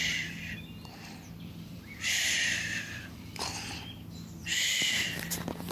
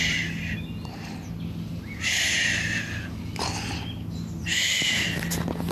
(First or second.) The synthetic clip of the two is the first